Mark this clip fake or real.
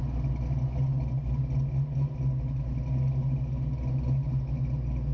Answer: real